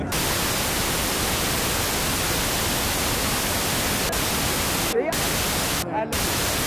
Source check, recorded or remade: recorded